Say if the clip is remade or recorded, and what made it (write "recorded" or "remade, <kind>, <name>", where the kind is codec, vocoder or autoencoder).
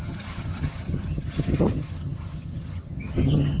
remade, vocoder, HiFi-GAN